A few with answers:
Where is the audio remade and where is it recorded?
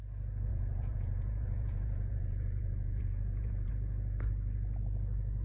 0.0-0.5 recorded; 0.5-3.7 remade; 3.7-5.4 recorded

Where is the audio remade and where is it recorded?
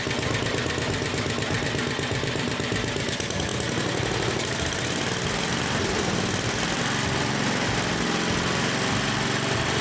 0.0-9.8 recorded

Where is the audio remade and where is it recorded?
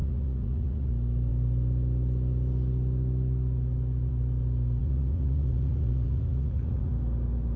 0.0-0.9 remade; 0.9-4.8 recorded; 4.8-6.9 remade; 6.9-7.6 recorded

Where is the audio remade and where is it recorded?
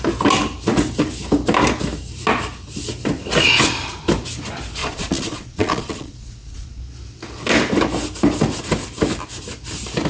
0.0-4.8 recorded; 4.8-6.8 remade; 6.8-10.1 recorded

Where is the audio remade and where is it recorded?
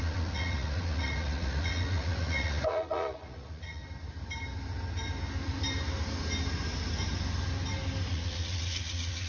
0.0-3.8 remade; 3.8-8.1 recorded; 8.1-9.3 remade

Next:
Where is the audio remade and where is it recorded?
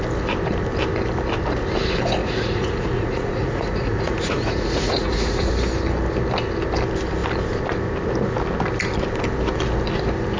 0.0-2.2 recorded; 2.2-5.5 remade; 5.5-10.4 recorded